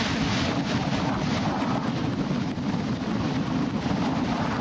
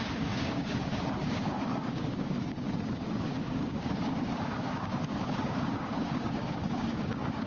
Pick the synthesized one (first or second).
second